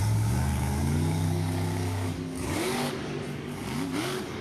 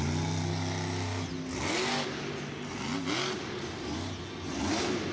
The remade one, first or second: first